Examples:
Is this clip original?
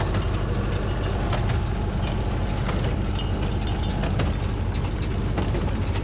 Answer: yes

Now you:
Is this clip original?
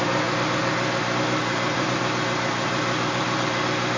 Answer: yes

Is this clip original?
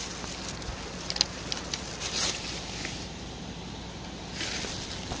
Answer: yes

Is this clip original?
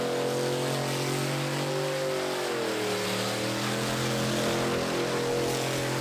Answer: yes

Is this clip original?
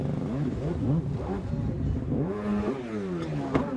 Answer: yes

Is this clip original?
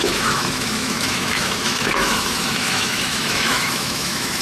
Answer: no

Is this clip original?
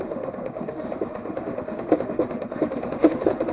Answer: no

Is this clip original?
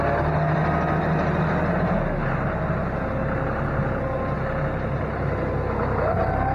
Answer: yes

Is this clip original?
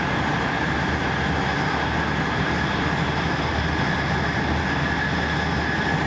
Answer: yes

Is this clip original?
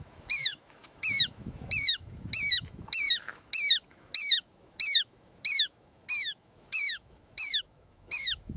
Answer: no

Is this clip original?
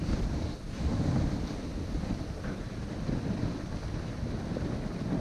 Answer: yes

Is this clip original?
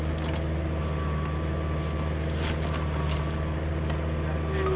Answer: yes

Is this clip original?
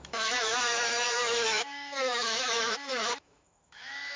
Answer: no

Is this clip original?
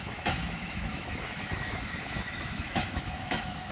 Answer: no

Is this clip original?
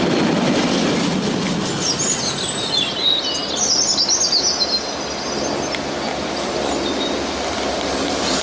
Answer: yes